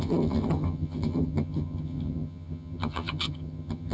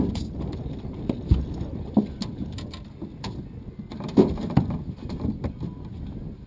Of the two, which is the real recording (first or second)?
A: second